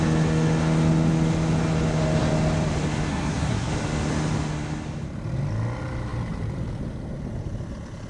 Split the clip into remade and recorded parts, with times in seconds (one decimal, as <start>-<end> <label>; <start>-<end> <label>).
0.0-3.1 recorded; 3.1-3.7 remade; 3.7-8.1 recorded